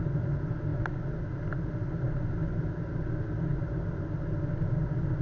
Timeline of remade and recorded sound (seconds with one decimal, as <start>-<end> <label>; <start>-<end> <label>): 0.0-5.2 recorded